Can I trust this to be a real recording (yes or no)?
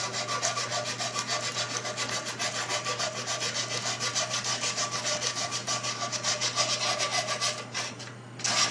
yes